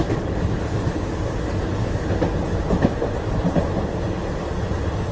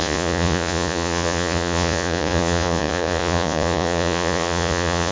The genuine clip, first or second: first